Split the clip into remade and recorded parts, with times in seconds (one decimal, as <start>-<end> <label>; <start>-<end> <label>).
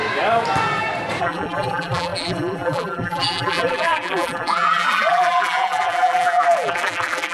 0.0-1.2 recorded; 1.2-7.3 remade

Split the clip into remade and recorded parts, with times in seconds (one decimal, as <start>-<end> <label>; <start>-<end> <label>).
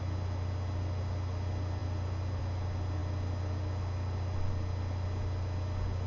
0.0-6.1 recorded